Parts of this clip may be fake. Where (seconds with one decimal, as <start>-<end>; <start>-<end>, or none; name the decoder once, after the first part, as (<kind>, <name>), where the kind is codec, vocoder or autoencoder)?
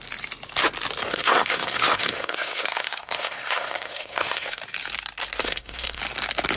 1.1-4.6 (codec, SNAC); 5.4-6.0